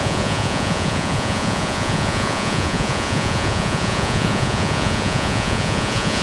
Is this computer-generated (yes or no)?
yes